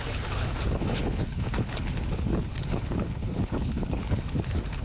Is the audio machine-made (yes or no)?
yes